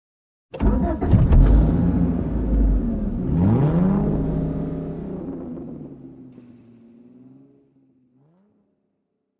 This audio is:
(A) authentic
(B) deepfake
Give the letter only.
A